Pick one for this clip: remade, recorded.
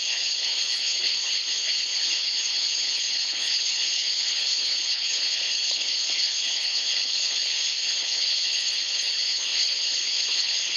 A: remade